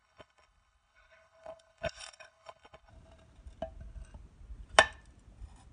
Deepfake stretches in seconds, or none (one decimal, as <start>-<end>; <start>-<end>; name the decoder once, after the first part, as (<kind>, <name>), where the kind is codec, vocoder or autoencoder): 0.0-2.9 (codec, HILCodec)